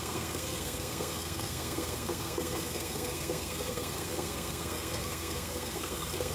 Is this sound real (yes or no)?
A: no